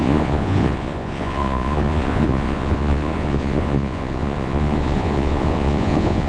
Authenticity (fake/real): fake